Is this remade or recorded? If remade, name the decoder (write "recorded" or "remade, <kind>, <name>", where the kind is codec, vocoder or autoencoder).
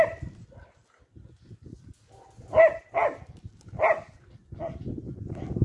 recorded